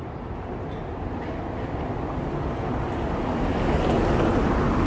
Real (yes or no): yes